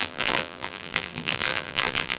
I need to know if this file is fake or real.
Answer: fake